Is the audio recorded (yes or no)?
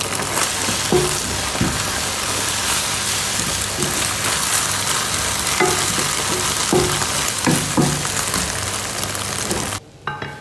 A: yes